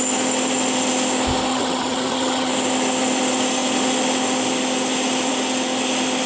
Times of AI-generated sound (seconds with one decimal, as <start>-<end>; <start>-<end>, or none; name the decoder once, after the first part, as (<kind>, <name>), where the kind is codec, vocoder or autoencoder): 1.5-2.5 (vocoder, HiFi-GAN)